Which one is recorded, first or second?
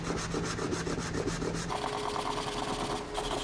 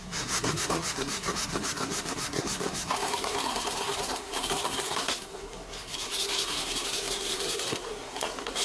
first